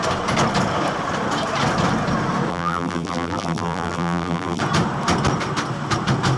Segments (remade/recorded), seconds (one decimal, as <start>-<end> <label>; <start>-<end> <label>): 0.0-2.5 recorded; 2.5-4.6 remade; 4.6-6.4 recorded